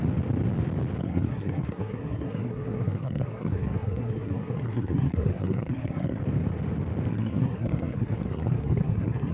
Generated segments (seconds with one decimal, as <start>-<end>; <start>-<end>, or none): 1.0-6.2; 7.1-9.3